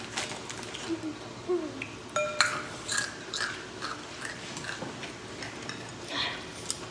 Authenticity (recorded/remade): recorded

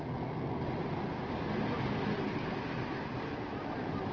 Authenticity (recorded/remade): recorded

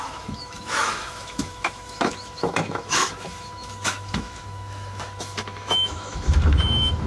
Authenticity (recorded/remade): remade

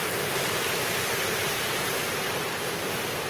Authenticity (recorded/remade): recorded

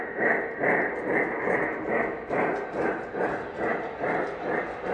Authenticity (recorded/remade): recorded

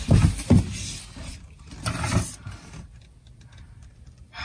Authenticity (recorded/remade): recorded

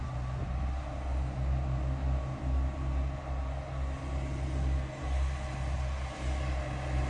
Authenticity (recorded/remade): recorded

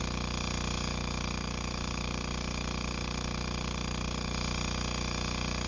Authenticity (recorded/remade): remade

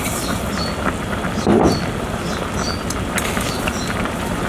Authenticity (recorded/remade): recorded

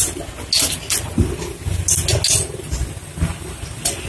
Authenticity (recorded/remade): recorded